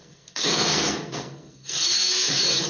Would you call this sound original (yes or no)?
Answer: no